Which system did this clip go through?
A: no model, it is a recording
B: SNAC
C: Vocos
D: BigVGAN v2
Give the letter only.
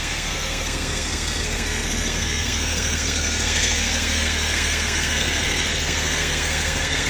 B